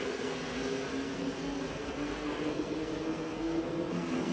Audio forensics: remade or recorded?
remade